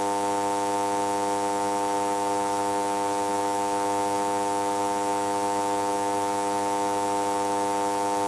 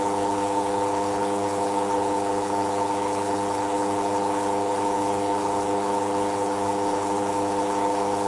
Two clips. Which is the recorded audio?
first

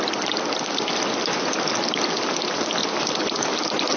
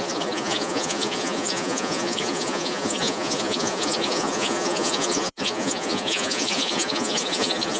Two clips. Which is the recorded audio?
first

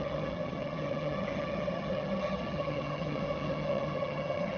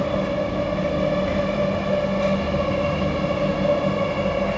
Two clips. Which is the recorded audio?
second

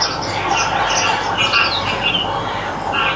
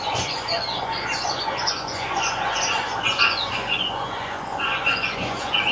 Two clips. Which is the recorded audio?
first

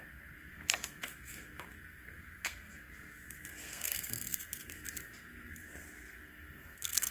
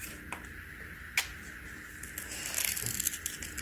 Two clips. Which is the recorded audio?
second